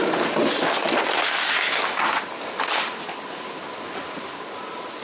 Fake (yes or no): no